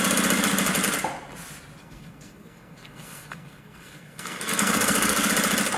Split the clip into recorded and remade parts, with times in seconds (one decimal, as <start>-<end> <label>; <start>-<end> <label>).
0.0-1.8 recorded; 1.8-5.3 remade; 5.3-5.8 recorded